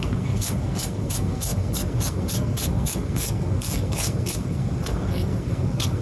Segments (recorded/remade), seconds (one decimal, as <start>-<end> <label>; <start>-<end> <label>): 0.0-6.0 remade

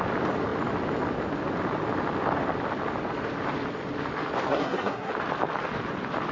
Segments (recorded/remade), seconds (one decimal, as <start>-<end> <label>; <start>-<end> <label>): 0.0-4.5 recorded; 4.5-5.1 remade; 5.1-6.3 recorded

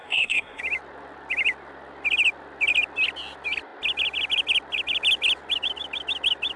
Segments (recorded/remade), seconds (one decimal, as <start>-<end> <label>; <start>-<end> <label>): 0.0-0.6 remade; 0.6-6.6 recorded

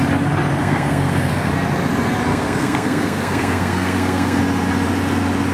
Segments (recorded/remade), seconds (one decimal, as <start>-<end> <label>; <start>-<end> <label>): 0.0-0.6 recorded; 0.6-1.5 remade; 1.5-2.3 recorded; 2.3-4.4 remade; 4.4-5.5 recorded

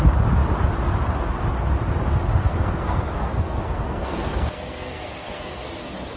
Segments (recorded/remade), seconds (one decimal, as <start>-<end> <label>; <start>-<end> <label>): 0.0-2.4 recorded; 2.4-5.8 remade; 5.8-6.2 recorded

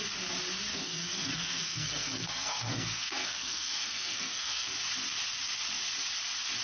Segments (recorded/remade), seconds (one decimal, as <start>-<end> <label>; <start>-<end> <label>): 0.0-0.7 recorded; 0.7-4.7 remade; 4.7-6.6 recorded

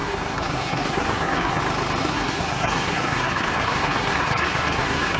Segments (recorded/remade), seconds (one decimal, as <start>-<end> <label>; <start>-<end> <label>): 0.0-1.6 remade; 1.6-2.0 recorded; 2.0-5.2 remade

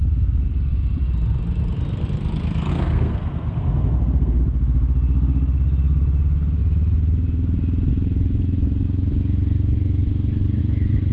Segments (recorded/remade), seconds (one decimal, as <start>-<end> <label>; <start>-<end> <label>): 0.0-2.7 recorded; 2.7-4.4 remade; 4.4-11.1 recorded